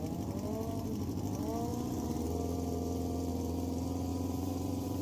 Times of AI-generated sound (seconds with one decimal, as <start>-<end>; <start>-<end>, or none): 4.1-5.0